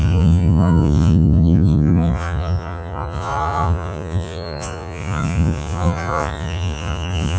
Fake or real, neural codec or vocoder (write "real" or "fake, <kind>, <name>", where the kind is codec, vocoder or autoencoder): fake, vocoder, Vocos